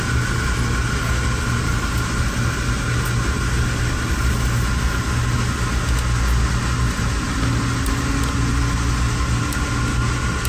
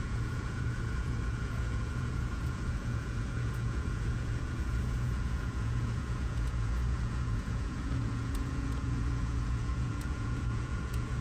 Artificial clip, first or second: second